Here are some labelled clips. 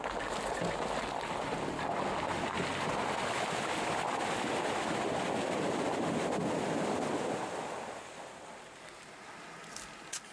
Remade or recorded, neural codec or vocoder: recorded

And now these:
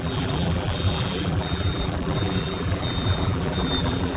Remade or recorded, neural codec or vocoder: remade, vocoder, BigVGAN v2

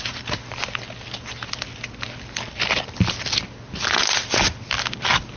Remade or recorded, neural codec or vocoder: recorded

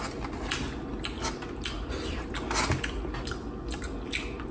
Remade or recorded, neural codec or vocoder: recorded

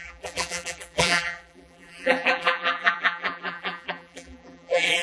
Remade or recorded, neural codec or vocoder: remade, vocoder, BigVGAN v2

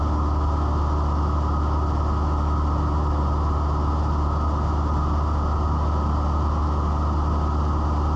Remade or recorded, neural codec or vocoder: recorded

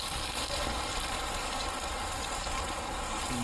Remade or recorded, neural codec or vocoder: recorded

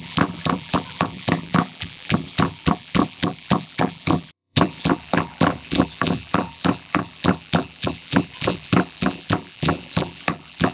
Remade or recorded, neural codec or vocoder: remade, vocoder, BigVGAN v2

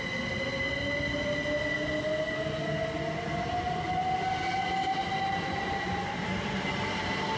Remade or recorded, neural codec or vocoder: recorded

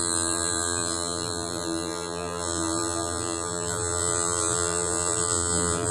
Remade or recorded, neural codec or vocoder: remade, vocoder, BigVGAN v2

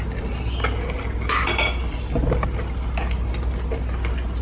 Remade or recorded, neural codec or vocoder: recorded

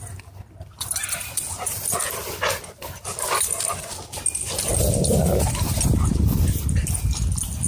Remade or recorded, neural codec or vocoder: recorded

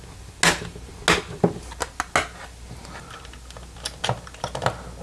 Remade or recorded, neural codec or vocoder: recorded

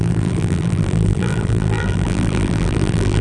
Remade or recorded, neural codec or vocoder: remade, vocoder, BigVGAN v2